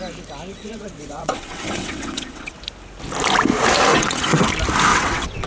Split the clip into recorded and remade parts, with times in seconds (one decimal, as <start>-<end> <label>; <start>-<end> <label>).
0.0-0.5 recorded; 0.5-2.5 remade; 2.5-3.9 recorded; 3.9-4.5 remade; 4.5-4.9 recorded; 4.9-5.5 remade